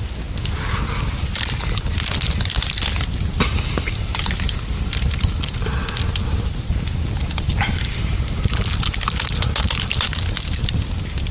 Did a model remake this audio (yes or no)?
no